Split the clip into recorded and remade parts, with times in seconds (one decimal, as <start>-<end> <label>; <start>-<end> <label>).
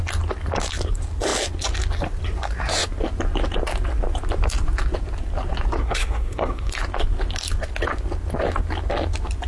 0.0-5.8 recorded; 5.8-6.7 remade; 6.7-9.5 recorded